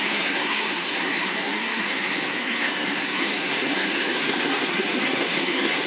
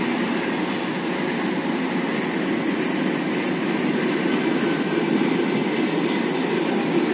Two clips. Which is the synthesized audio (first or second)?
first